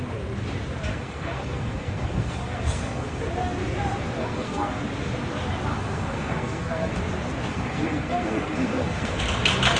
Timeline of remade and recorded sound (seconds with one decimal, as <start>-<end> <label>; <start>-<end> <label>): 0.0-0.9 recorded; 0.9-3.2 remade; 3.2-4.2 recorded; 4.2-4.8 remade; 4.8-5.7 recorded; 5.7-7.0 remade; 7.0-7.5 recorded; 7.5-9.2 remade; 9.2-9.8 recorded